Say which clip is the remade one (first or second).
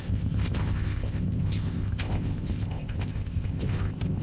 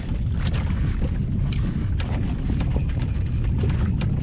first